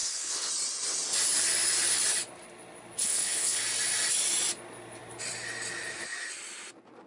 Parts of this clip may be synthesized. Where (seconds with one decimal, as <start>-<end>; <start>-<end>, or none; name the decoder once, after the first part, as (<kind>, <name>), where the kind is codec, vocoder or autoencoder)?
0.0-0.5 (codec, HILCodec); 3.0-3.6